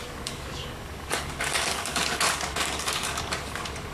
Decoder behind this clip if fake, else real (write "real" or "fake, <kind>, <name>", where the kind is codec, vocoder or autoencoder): fake, codec, DAC